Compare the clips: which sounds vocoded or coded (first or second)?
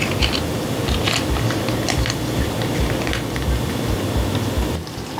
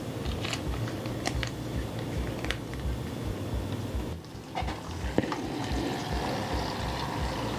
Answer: first